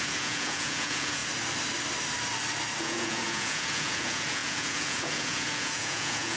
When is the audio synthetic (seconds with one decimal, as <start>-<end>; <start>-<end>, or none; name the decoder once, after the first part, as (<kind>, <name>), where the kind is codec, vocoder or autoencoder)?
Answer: 0.0-1.2 (vocoder, Vocos); 2.8-6.4